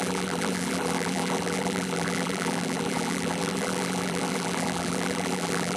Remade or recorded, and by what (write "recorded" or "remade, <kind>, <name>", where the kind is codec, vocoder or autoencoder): remade, vocoder, BigVGAN v2